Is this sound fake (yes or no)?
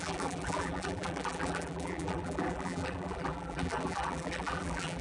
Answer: yes